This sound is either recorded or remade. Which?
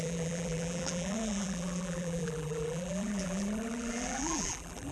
remade